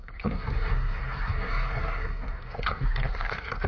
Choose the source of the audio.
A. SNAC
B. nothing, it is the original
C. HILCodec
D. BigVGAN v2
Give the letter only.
A